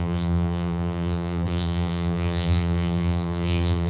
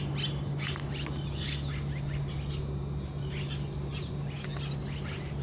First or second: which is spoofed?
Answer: first